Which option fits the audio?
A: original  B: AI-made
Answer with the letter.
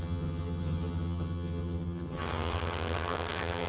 B